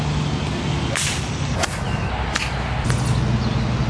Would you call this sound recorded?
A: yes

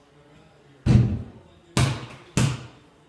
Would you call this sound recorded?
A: yes